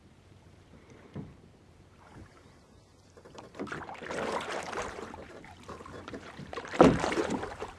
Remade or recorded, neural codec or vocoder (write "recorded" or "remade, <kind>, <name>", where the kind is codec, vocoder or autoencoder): remade, vocoder, BigVGAN v2